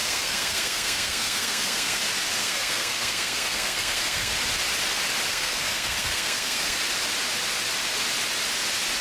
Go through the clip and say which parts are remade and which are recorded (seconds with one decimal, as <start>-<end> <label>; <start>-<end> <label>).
0.0-2.0 remade; 2.0-2.4 recorded; 2.4-4.3 remade; 4.3-5.3 recorded; 5.3-6.8 remade; 6.8-9.0 recorded